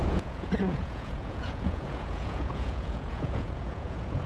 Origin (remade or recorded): remade